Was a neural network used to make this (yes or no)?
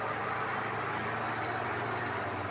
no